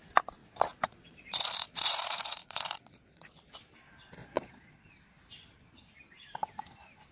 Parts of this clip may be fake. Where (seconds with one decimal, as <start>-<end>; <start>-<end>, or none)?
0.4-3.3; 4.2-4.9